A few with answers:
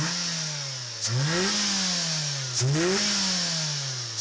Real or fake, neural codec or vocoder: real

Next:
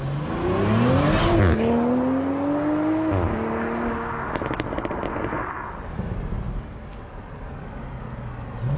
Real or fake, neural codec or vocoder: real